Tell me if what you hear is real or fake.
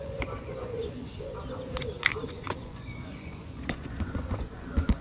fake